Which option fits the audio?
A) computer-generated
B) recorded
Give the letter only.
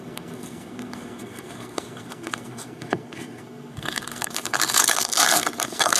A